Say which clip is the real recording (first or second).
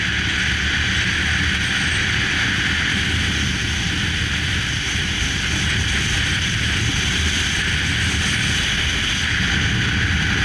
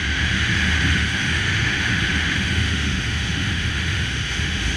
first